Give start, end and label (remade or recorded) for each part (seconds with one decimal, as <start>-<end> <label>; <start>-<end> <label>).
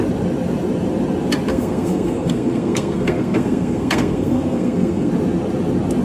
0.0-1.5 recorded; 1.5-5.1 remade; 5.1-6.0 recorded